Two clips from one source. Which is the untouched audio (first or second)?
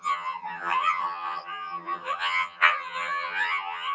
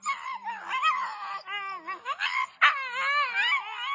second